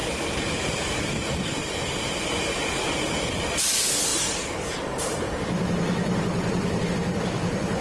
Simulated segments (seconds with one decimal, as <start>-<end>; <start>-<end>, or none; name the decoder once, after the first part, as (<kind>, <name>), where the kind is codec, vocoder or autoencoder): 0.7-7.8 (vocoder, BigVGAN v2)